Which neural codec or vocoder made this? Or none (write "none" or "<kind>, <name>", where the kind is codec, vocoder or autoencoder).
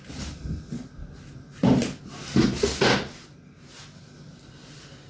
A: none